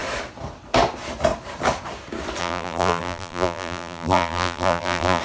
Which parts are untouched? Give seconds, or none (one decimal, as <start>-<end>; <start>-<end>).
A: 0.0-2.4